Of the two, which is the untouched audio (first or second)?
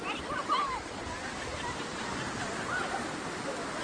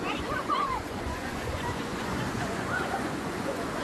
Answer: first